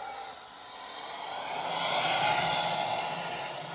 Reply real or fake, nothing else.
real